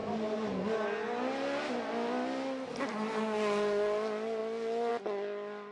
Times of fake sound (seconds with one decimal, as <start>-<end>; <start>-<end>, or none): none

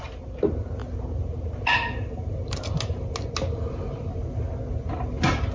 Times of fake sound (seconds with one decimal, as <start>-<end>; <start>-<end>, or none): none

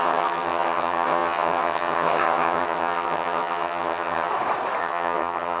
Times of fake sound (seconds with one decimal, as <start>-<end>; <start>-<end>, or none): 0.0-4.3; 4.8-5.6